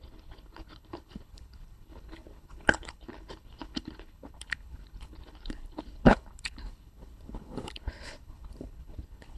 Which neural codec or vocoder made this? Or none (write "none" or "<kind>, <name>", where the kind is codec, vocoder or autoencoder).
codec, HILCodec